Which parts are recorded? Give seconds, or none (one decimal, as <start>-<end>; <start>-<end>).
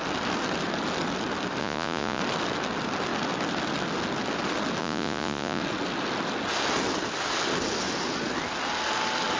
0.0-1.6; 2.2-4.8; 5.6-9.4